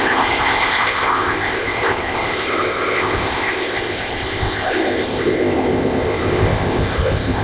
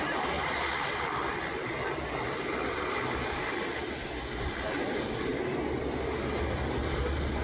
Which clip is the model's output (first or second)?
first